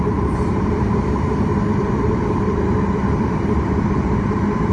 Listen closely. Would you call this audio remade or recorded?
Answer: remade